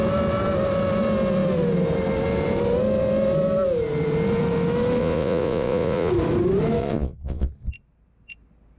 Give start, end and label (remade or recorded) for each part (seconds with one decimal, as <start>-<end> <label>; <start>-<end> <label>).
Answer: 0.0-5.0 recorded; 5.0-6.1 remade; 6.1-6.8 recorded; 6.8-7.5 remade; 7.5-8.8 recorded